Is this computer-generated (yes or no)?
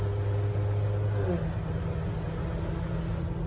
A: no